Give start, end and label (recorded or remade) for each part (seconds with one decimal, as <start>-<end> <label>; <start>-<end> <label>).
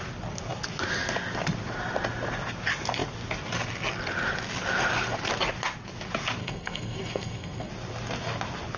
0.0-6.4 recorded; 6.4-7.7 remade; 7.7-8.8 recorded